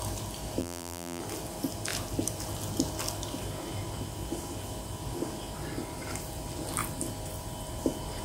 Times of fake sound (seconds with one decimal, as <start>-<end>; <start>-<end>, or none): 0.6-1.2